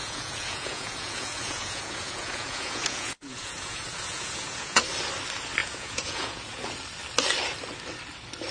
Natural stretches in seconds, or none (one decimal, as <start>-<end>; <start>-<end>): 4.8-5.6; 6.6-8.5